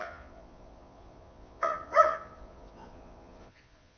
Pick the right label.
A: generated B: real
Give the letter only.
A